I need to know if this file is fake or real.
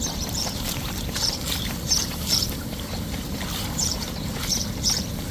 fake